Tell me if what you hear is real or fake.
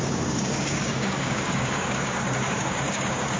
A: fake